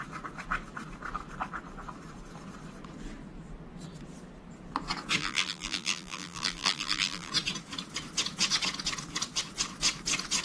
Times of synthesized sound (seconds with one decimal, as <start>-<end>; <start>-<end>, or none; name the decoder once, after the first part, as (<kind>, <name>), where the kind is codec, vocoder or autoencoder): 5.2-7.3 (vocoder, BigVGAN v2)

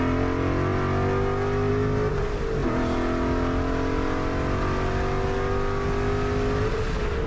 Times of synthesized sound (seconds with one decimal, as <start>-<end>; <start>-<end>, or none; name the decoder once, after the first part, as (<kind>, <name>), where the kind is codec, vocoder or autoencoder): none

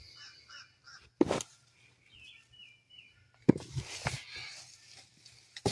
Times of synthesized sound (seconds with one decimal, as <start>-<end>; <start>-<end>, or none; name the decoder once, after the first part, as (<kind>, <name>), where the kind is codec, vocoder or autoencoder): 2.6-3.5 (vocoder, BigVGAN v2)

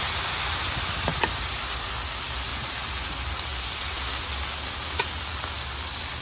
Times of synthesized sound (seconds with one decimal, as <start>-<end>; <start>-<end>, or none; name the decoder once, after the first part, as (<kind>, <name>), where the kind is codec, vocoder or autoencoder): 1.1-1.9 (vocoder, BigVGAN v2); 2.5-3.1

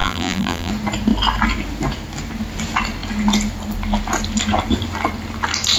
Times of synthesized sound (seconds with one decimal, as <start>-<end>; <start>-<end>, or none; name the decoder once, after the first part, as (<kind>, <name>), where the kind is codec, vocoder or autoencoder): 0.0-0.7 (vocoder, BigVGAN v2)